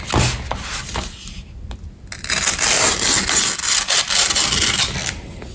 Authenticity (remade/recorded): recorded